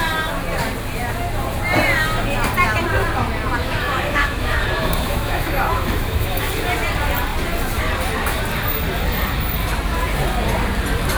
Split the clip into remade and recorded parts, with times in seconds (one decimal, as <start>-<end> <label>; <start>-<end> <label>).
0.0-3.6 recorded; 3.6-6.5 remade; 6.5-11.2 recorded